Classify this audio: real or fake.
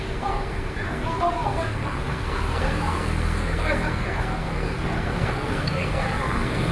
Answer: fake